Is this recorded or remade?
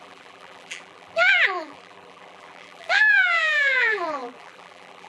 remade